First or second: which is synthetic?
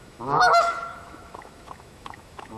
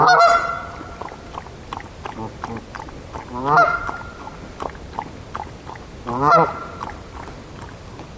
first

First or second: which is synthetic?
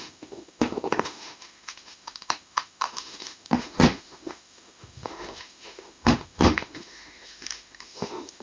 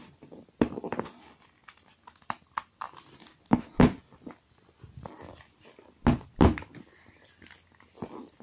first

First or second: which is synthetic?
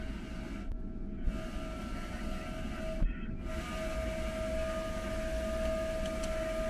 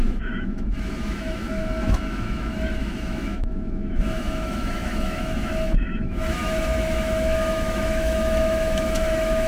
second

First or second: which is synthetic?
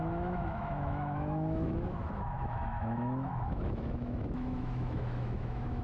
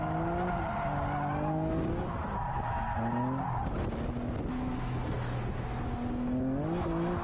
first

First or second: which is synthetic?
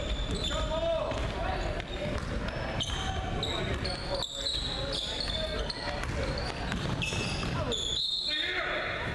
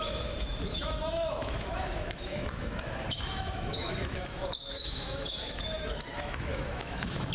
second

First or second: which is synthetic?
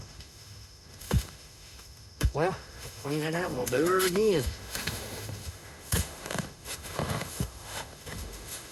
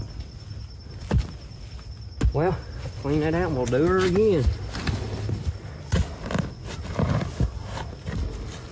first